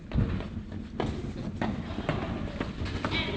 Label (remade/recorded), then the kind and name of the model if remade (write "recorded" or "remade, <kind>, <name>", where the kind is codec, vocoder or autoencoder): recorded